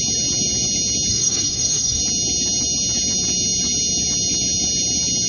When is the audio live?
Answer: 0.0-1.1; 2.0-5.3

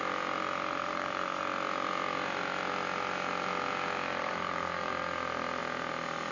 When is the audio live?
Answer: 0.0-0.8; 1.4-4.2; 4.9-6.3